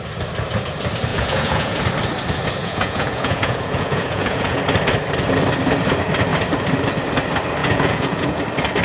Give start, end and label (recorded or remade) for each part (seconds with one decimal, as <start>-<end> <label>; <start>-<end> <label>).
0.0-1.1 recorded; 1.1-1.8 remade; 1.8-2.6 recorded; 2.6-4.6 remade; 4.6-7.6 recorded; 7.6-8.4 remade; 8.4-8.8 recorded